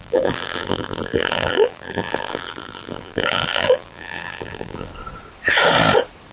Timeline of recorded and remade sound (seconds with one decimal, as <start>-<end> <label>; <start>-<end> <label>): 0.0-4.9 remade; 4.9-6.3 recorded

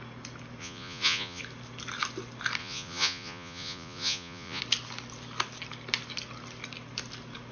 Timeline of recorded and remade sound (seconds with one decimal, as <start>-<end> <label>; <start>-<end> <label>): 0.0-0.6 recorded; 0.6-1.4 remade; 1.4-2.6 recorded; 2.6-4.6 remade; 4.6-7.5 recorded

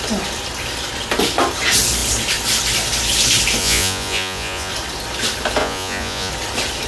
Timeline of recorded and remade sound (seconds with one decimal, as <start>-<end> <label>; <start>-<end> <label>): 0.0-3.6 recorded; 3.6-4.7 remade; 4.7-5.6 recorded; 5.6-6.3 remade; 6.3-6.9 recorded

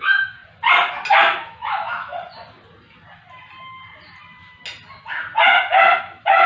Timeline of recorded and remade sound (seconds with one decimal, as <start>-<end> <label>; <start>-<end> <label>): 0.0-0.4 remade; 0.4-1.1 recorded; 1.1-2.1 remade; 2.1-6.0 recorded; 6.0-6.5 remade

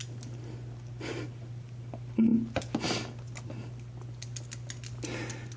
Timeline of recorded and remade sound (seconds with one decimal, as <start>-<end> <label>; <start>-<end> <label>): 0.0-5.6 recorded

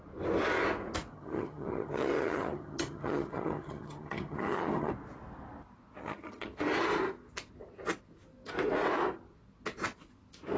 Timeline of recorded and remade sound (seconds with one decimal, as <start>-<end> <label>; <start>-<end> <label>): 0.0-1.1 recorded; 1.1-4.9 remade; 4.9-6.0 recorded; 6.0-6.6 remade; 6.6-10.6 recorded

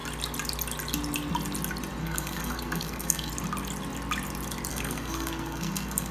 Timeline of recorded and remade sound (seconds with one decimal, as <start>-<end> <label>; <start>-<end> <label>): 0.0-2.0 recorded; 2.0-3.3 remade; 3.3-4.7 recorded; 4.7-6.1 remade